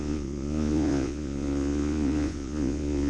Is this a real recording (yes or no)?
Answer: no